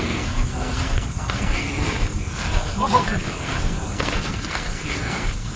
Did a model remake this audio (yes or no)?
yes